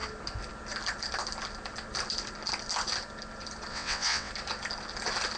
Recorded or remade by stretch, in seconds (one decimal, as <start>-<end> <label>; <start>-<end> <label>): 0.0-3.7 recorded; 3.7-4.3 remade; 4.3-5.4 recorded